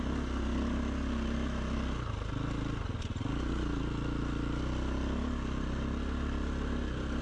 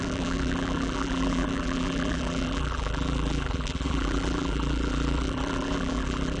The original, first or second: first